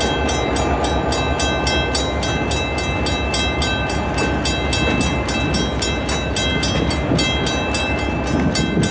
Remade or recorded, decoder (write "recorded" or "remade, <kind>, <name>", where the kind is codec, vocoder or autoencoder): recorded